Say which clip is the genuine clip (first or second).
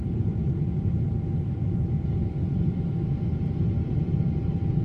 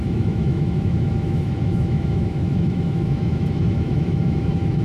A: first